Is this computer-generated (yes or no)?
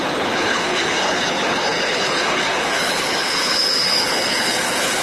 yes